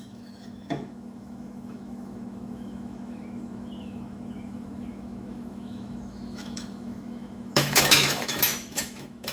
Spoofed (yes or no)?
yes